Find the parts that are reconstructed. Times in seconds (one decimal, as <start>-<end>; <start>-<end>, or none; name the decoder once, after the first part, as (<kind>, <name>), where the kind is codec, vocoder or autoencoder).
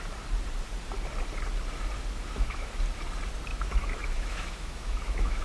2.2-2.8 (autoencoder, DAC-VAE); 3.5-5.4